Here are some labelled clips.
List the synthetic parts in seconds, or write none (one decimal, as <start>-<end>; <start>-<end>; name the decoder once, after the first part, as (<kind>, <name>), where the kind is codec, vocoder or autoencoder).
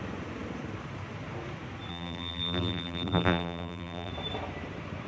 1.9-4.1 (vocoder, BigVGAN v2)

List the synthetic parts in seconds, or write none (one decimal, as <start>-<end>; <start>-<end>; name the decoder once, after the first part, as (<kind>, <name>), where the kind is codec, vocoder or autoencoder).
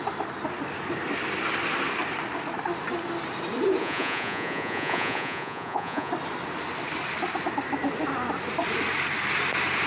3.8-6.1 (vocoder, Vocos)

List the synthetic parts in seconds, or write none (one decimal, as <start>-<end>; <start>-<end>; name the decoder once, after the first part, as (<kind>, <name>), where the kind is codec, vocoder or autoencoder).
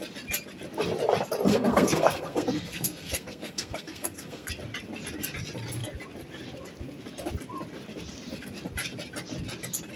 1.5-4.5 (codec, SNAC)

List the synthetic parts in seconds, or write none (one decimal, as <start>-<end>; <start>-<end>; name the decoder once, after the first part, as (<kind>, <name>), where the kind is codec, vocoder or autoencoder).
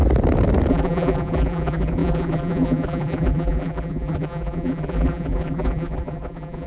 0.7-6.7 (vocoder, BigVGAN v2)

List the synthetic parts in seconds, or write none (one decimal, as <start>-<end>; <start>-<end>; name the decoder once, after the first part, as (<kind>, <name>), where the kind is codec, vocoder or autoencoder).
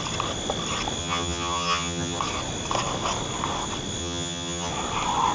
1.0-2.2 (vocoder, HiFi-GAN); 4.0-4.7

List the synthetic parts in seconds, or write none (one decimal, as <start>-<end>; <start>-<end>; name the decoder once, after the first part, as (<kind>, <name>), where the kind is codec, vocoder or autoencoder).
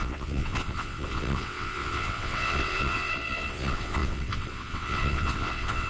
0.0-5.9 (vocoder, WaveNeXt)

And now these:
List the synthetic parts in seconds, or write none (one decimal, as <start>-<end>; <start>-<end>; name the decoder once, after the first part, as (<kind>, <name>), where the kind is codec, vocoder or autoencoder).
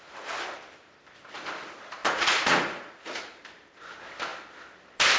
2.0-3.3 (vocoder, Vocos)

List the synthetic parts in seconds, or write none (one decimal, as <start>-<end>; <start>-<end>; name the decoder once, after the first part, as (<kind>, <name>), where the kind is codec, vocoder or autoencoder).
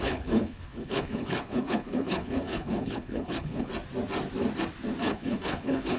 0.0-3.7 (codec, HILCodec); 5.0-6.0